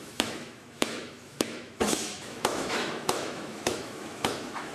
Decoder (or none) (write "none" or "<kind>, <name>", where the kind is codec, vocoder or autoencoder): autoencoder, DAC-VAE